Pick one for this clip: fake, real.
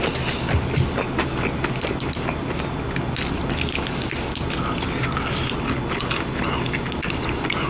real